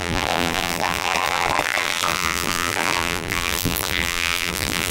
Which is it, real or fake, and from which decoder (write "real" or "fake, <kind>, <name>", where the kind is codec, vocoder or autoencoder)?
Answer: fake, vocoder, BigVGAN v2